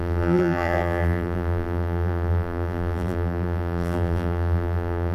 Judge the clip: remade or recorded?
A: remade